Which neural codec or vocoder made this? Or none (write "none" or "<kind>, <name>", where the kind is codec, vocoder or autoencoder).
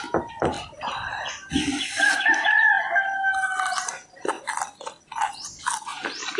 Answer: none